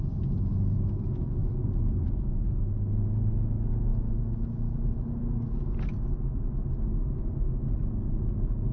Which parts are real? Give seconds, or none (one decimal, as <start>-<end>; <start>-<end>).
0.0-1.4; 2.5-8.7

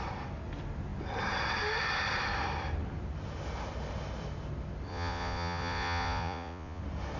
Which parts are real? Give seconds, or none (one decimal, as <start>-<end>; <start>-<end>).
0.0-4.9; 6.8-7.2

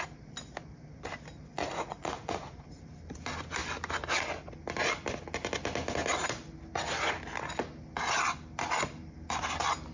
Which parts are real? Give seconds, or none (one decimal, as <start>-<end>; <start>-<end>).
0.0-1.5; 2.8-9.9